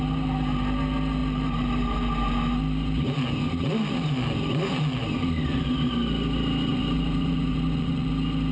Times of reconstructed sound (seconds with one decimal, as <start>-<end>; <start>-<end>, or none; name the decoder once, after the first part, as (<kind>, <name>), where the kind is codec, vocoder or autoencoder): 6.7-8.1 (vocoder, Vocos)